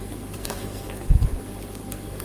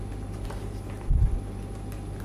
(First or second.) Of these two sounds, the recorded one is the second